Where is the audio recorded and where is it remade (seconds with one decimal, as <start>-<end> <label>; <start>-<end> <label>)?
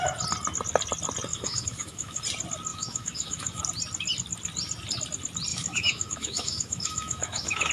0.0-1.3 recorded; 1.3-2.2 remade; 2.2-2.7 recorded; 2.7-3.6 remade; 3.6-5.5 recorded; 5.5-7.7 remade